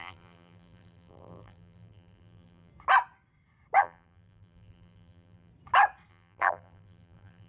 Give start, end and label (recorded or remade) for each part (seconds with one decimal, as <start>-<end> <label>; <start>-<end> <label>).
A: 0.0-2.7 remade; 2.7-3.8 recorded; 3.8-5.5 remade; 5.5-6.1 recorded; 6.1-7.5 remade